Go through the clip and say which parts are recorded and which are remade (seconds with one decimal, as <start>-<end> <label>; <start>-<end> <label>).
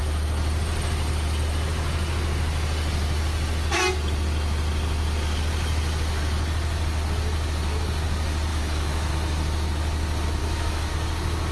0.0-8.5 recorded; 8.5-9.1 remade; 9.1-10.4 recorded; 10.4-10.9 remade; 10.9-11.5 recorded